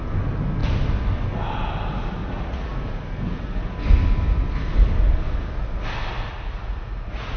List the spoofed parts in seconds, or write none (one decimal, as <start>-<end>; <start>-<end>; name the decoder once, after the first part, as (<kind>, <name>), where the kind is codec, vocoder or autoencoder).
2.2-2.7 (vocoder, Vocos); 6.3-7.4